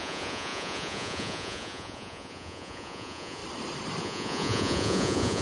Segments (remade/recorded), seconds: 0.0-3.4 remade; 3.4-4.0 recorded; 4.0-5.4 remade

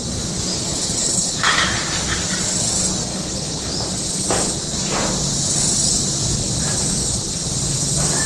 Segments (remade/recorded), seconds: 0.0-0.5 recorded; 0.5-1.5 remade; 1.5-3.1 recorded; 3.1-3.7 remade; 3.7-8.3 recorded

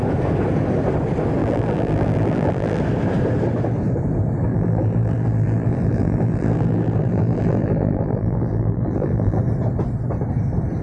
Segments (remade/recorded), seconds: 0.0-1.4 recorded; 1.4-2.8 remade; 2.8-4.5 recorded; 4.5-9.4 remade; 9.4-10.8 recorded

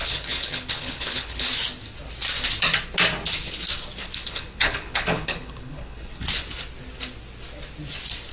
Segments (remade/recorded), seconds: 0.0-1.5 remade; 1.5-4.0 recorded; 4.0-6.2 remade; 6.2-8.3 recorded

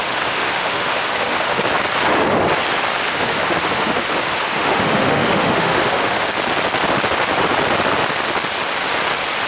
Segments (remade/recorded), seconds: 0.0-1.6 remade; 1.6-3.1 recorded; 3.1-6.3 remade; 6.3-9.5 recorded

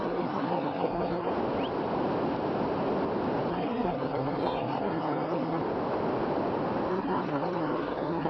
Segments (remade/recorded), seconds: 0.0-1.3 remade; 1.3-3.5 recorded; 3.5-5.6 remade; 5.6-6.9 recorded; 6.9-8.3 remade

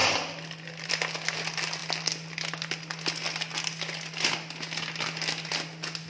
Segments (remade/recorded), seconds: 0.0-0.9 remade; 0.9-6.1 recorded